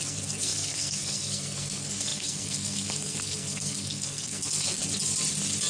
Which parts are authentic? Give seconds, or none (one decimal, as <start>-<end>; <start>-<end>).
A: 4.8-5.7